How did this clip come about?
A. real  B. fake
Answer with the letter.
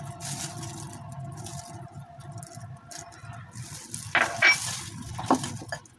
A